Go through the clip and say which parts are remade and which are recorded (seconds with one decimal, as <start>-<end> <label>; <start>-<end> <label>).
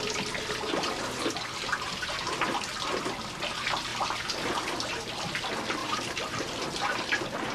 0.0-1.7 recorded; 1.7-2.4 remade; 2.4-3.9 recorded; 3.9-4.6 remade; 4.6-5.8 recorded; 5.8-6.6 remade; 6.6-7.5 recorded